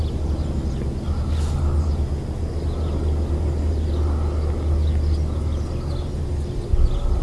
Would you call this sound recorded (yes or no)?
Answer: yes